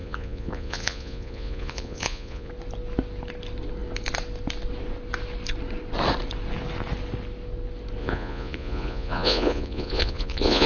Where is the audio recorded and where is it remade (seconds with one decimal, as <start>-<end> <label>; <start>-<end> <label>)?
0.0-2.5 remade; 2.5-8.0 recorded; 8.0-10.7 remade

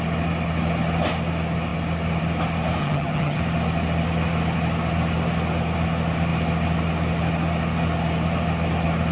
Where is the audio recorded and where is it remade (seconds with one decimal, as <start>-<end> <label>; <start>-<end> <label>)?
0.0-2.8 recorded; 2.8-3.4 remade; 3.4-9.1 recorded